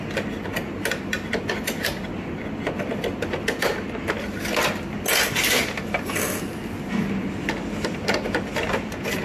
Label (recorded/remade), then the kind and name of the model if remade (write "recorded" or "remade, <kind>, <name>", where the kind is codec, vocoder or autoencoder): recorded